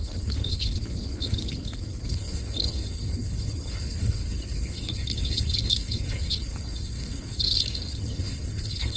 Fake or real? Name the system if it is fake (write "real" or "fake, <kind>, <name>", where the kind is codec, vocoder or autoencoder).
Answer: fake, codec, HILCodec